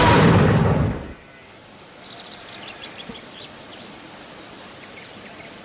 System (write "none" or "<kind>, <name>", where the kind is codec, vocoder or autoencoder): vocoder, BigVGAN v2